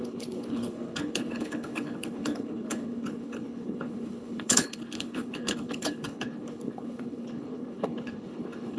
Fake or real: fake